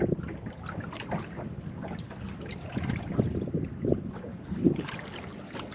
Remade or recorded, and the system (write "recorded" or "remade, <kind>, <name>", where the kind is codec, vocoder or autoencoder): recorded